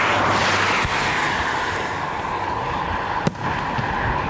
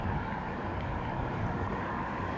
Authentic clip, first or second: first